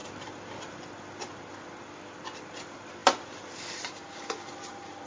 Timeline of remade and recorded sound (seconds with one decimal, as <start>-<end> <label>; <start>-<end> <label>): 0.0-5.1 recorded